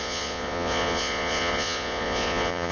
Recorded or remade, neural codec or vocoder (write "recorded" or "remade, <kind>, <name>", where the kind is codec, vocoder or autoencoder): remade, vocoder, Vocos